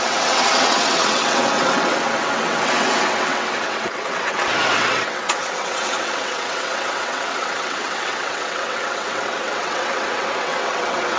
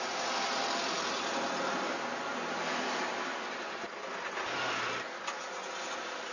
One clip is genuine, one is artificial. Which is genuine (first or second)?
second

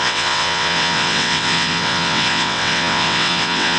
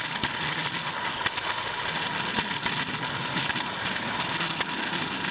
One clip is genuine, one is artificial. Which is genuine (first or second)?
second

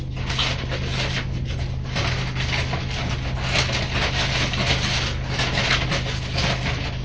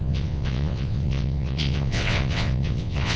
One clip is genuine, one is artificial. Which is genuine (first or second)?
first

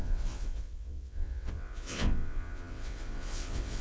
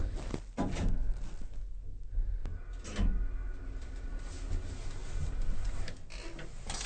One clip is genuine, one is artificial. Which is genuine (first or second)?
second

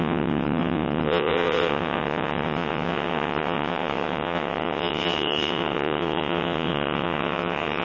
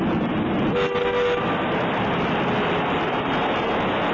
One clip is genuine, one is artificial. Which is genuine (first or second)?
second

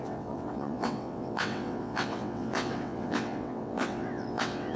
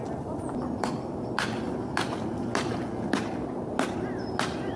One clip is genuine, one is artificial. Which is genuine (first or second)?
second